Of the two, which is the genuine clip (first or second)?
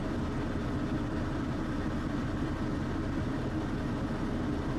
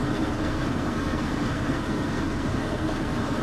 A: first